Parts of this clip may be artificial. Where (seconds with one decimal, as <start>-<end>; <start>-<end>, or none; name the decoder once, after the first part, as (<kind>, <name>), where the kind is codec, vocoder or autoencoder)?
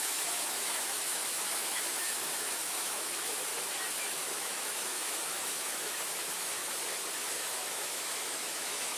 0.0-3.5 (autoencoder, DAC-VAE); 4.0-6.6; 7.2-9.0